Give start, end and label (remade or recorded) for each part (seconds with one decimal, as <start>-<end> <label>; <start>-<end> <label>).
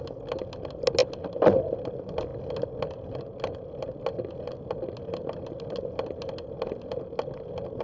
0.0-7.8 recorded